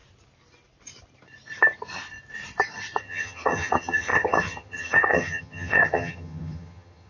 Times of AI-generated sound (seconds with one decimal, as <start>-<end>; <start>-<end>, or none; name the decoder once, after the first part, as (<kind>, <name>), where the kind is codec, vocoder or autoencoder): 3.0-7.1 (vocoder, HiFi-GAN)